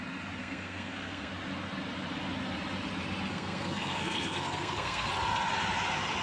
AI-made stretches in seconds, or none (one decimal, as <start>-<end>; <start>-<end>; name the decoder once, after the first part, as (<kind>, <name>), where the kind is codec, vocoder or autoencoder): 0.4-1.3 (codec, SNAC); 3.3-5.1